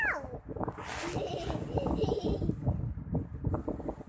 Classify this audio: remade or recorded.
recorded